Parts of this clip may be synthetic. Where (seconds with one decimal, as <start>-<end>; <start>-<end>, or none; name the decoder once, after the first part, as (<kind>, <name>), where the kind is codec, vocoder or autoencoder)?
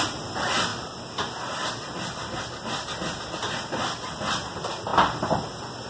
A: none